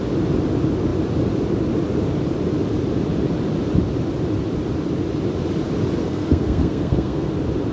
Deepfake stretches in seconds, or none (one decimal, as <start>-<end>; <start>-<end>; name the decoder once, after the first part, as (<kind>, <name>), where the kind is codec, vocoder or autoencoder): 6.0-7.3 (codec, SNAC)